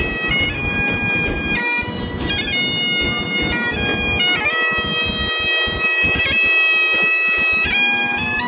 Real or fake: real